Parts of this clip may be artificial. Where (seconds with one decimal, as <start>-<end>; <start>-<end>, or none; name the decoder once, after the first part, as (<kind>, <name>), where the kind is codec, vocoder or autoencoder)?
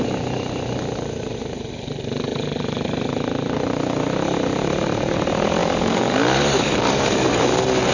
5.6-7.5 (codec, DAC)